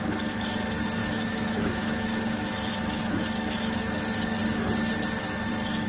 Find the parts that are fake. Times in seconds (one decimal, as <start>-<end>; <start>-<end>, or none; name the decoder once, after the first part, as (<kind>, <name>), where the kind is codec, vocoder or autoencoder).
1.0-4.0 (autoencoder, DAC-VAE)

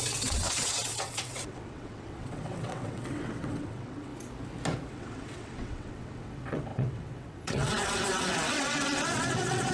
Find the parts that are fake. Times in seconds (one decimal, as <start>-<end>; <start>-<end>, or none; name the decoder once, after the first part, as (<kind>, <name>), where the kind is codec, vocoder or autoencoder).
0.0-4.1 (vocoder, WaveNeXt); 4.9-9.7

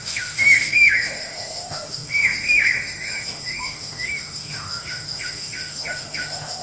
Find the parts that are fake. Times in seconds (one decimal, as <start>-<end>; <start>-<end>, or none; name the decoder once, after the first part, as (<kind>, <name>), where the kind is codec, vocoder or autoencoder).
0.0-6.6 (autoencoder, DAC-VAE)

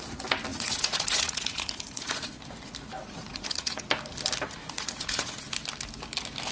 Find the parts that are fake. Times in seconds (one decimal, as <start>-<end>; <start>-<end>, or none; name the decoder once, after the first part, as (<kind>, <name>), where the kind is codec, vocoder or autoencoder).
0.5-2.3 (vocoder, Vocos); 3.0-3.8; 4.6-5.4